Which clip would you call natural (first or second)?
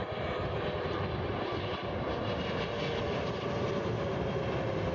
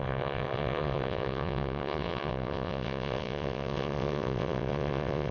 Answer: first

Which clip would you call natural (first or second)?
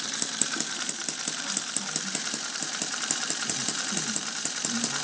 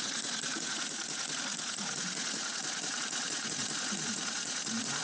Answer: first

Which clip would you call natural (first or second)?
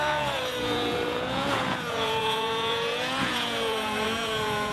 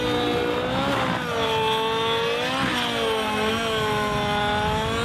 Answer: second